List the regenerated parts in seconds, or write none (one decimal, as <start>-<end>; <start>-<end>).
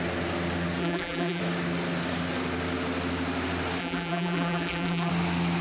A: 0.8-1.4; 3.8-5.1